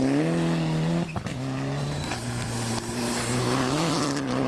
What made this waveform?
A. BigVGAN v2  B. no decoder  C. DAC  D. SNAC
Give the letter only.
B